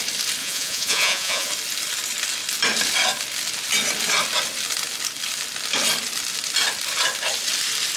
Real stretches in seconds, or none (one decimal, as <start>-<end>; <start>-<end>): 0.0-0.4; 1.5-8.0